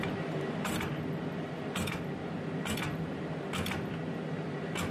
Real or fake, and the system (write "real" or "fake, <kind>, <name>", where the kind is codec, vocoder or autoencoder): real